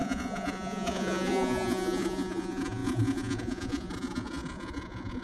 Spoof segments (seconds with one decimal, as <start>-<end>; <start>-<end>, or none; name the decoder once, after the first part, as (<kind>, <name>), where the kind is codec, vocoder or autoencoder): 0.0-5.2 (vocoder, Vocos)